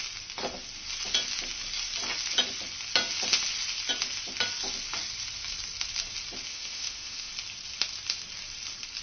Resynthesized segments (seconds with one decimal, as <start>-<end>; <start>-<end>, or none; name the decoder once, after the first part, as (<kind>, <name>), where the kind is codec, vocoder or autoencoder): 6.5-7.3 (autoencoder, DAC-VAE)